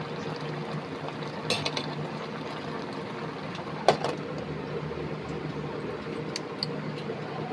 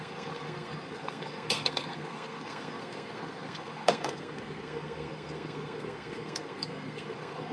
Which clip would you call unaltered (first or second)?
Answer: first